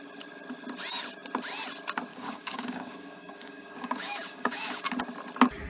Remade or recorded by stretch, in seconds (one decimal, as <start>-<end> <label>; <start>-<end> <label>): 0.0-2.1 recorded; 2.1-4.8 remade; 4.8-5.7 recorded